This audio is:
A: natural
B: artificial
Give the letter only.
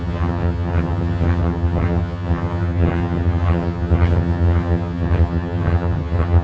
B